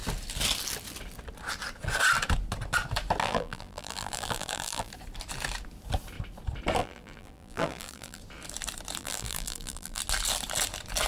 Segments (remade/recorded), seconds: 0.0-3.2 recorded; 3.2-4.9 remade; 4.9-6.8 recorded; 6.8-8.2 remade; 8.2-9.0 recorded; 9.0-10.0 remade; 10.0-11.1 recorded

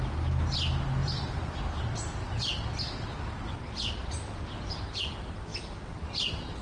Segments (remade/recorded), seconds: 0.0-1.0 recorded; 1.0-5.0 remade; 5.0-6.6 recorded

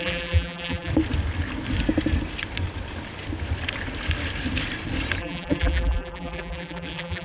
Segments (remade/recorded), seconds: 0.0-0.9 remade; 0.9-5.2 recorded; 5.2-7.2 remade

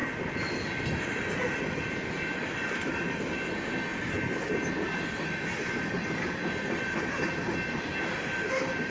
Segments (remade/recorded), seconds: 0.0-1.6 recorded; 1.6-3.9 remade; 3.9-8.1 recorded; 8.1-8.9 remade

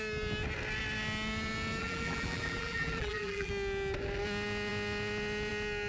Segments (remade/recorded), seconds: 0.0-1.8 recorded; 1.8-3.5 remade; 3.5-5.9 recorded